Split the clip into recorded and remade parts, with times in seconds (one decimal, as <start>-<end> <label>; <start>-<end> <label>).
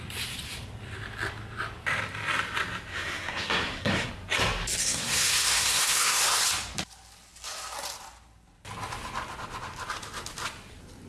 0.0-2.9 recorded; 2.9-4.1 remade; 4.1-4.8 recorded; 4.8-6.4 remade; 6.4-11.1 recorded